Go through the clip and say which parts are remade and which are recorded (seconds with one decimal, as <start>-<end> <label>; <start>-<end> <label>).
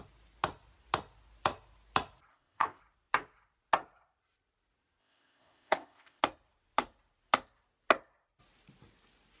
0.0-2.3 recorded; 2.3-2.8 remade; 2.8-5.0 recorded; 5.0-6.2 remade; 6.2-9.4 recorded